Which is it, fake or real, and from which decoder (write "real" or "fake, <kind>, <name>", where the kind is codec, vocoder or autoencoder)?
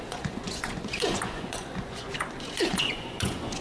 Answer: fake, vocoder, Vocos